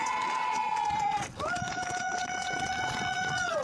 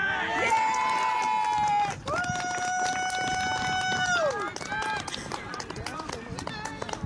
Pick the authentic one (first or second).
second